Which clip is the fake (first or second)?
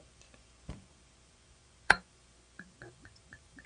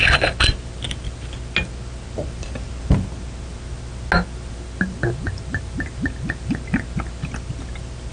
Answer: first